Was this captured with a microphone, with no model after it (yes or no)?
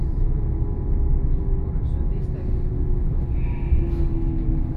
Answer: yes